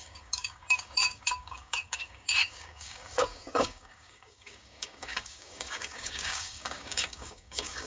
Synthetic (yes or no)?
yes